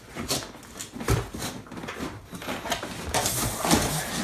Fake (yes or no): no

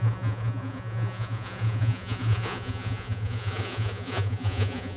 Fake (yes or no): yes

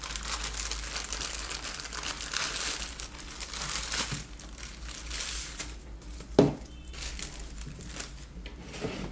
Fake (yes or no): no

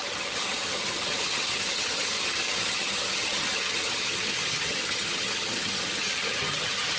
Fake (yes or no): yes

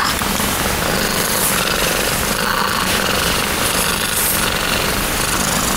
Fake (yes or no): yes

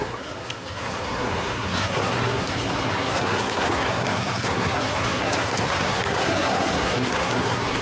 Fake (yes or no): yes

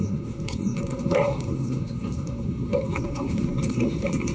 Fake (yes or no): yes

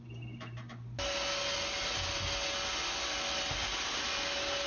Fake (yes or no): no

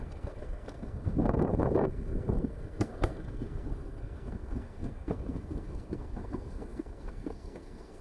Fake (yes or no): yes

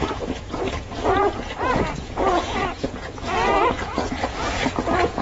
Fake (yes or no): yes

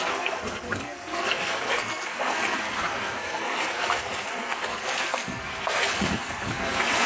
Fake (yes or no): yes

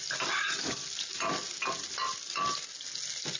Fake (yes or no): no